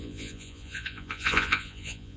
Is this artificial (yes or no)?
yes